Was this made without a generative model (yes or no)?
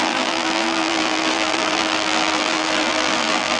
no